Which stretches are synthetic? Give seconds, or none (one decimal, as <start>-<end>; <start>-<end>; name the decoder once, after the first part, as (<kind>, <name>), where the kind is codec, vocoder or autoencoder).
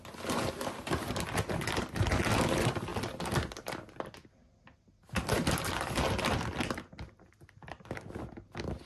none